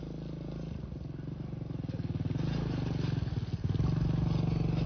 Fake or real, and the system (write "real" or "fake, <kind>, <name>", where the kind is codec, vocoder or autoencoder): real